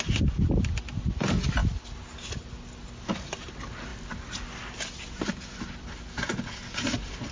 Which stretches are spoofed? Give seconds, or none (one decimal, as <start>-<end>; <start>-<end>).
none